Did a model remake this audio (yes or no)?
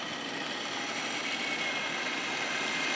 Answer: no